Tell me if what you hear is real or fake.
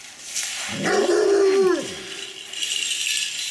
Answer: real